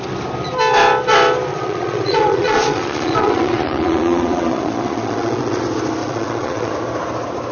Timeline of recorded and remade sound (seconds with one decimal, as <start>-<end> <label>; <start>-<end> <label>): 0.0-1.5 recorded; 1.5-5.6 remade; 5.6-6.0 recorded; 6.0-6.7 remade; 6.7-7.5 recorded